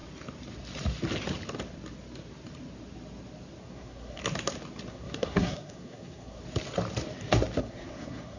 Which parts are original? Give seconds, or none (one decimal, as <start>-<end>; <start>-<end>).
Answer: 0.0-3.6; 4.2-4.9; 6.4-7.6